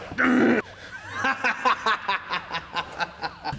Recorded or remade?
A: recorded